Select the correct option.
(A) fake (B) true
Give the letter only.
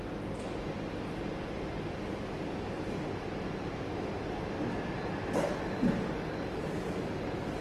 B